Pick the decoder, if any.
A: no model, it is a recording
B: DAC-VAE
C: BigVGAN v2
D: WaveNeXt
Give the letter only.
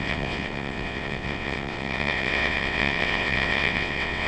D